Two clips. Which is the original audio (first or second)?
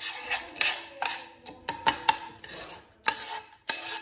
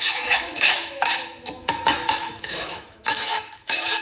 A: first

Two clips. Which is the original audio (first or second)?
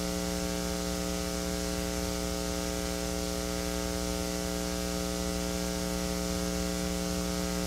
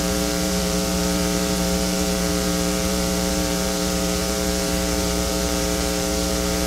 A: first